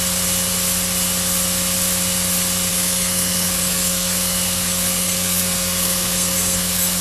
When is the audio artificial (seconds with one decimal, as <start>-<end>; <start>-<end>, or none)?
2.7-7.0